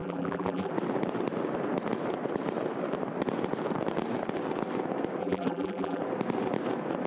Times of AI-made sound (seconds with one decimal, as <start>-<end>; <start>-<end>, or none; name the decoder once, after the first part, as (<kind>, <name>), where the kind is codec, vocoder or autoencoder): 0.0-0.7 (vocoder, BigVGAN v2); 5.2-6.0

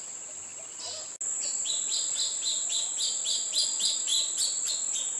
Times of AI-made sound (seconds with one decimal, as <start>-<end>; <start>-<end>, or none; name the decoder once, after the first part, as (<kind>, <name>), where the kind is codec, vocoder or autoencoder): none

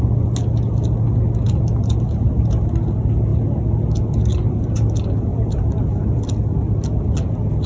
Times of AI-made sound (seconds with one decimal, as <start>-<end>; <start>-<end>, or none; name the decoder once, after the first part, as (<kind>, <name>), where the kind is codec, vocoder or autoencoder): 5.3-6.3 (vocoder, BigVGAN v2)

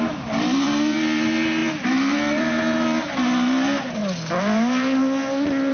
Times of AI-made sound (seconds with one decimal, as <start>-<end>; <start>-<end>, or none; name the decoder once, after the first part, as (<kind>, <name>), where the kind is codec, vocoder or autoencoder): 0.0-4.0 (vocoder, BigVGAN v2)

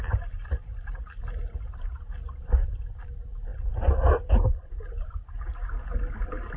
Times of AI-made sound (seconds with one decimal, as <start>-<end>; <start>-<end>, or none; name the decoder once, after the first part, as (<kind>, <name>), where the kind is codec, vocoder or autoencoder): 3.5-4.1 (vocoder, BigVGAN v2)

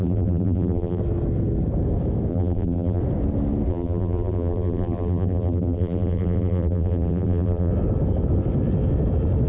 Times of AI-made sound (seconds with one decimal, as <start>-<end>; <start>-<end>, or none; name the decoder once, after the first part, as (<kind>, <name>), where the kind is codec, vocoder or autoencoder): 0.0-1.0 (vocoder, BigVGAN v2); 2.3-3.0; 3.7-7.7

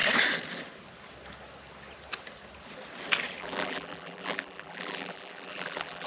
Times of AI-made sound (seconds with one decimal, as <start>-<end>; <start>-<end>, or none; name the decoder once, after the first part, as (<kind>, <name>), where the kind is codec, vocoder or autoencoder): 3.4-6.1 (vocoder, BigVGAN v2)